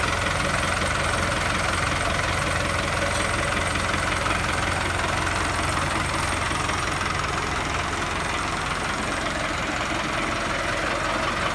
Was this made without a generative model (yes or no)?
yes